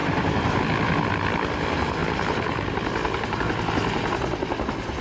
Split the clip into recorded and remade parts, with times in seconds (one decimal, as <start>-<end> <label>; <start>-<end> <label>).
0.0-0.6 remade; 0.6-2.0 recorded; 2.0-3.4 remade; 3.4-5.0 recorded